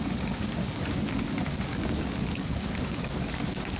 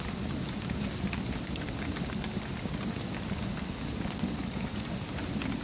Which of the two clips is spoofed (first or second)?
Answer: first